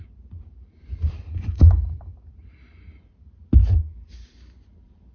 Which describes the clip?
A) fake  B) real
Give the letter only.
B